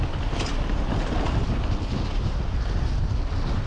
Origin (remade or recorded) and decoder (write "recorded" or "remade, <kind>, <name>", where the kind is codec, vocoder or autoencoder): recorded